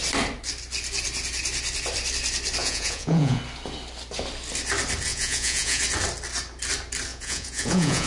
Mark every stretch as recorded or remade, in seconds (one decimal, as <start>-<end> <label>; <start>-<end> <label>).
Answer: 0.0-2.6 recorded; 2.6-3.4 remade; 3.4-5.1 recorded; 5.1-5.8 remade; 5.8-7.1 recorded; 7.1-8.1 remade